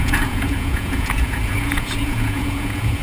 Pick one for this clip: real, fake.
fake